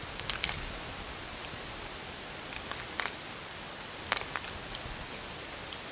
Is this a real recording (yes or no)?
yes